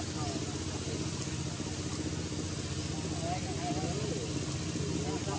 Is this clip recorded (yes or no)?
yes